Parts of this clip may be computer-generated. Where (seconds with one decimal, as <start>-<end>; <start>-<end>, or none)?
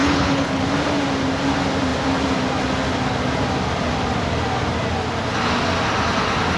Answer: 0.0-0.6